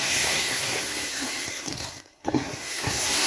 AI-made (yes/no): yes